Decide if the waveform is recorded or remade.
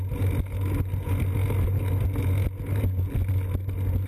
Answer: recorded